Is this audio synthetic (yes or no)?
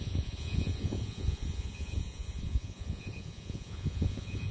yes